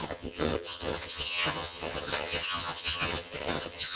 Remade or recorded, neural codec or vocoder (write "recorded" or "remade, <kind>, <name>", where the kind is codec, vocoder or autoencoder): remade, vocoder, HiFi-GAN